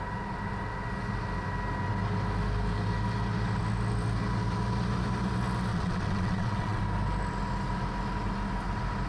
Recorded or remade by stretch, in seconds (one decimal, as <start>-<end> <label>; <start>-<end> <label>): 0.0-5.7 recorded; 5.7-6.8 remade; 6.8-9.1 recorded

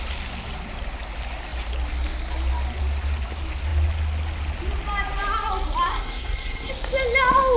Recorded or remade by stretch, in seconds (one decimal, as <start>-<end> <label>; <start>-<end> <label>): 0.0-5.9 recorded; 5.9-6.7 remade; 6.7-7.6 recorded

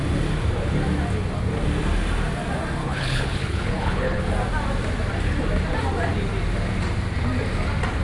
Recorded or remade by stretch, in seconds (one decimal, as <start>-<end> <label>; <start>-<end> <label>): 0.0-2.8 recorded; 2.8-4.2 remade; 4.2-8.0 recorded

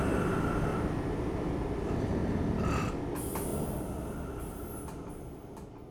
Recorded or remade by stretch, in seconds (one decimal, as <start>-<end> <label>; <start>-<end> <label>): 0.0-0.7 recorded; 0.7-1.4 remade; 1.4-2.2 recorded; 2.2-2.9 remade; 2.9-3.5 recorded; 3.5-4.4 remade; 4.4-5.9 recorded

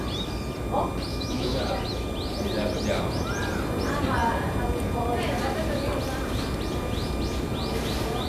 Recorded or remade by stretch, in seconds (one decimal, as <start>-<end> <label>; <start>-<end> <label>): 0.0-1.1 recorded; 1.1-1.6 remade; 1.6-8.3 recorded

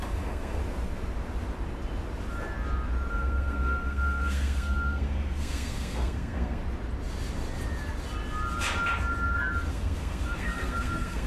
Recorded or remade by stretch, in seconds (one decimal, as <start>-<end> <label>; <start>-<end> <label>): 0.0-0.6 remade; 0.6-3.1 recorded; 3.1-6.6 remade; 6.6-9.7 recorded; 9.7-11.3 remade

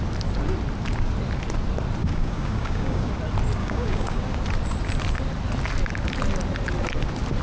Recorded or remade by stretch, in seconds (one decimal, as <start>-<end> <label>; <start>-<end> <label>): 0.0-2.0 recorded; 2.0-3.1 remade; 3.1-3.6 recorded; 3.6-4.2 remade; 4.2-7.4 recorded